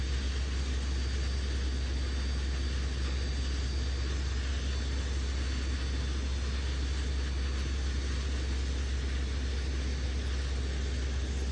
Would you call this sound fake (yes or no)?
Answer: no